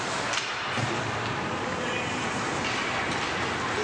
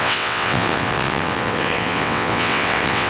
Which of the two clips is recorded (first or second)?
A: first